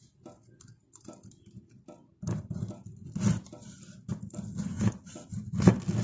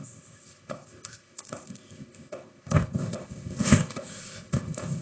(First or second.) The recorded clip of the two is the first